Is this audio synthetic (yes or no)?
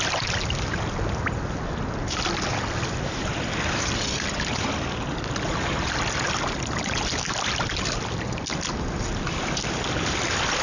no